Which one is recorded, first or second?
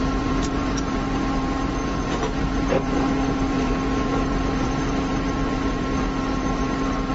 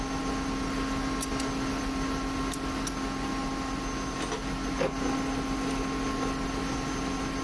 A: second